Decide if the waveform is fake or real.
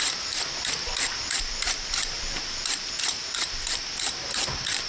real